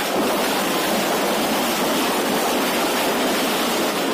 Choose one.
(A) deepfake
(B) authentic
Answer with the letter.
B